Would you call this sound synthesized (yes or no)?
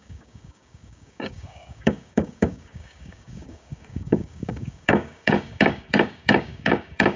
yes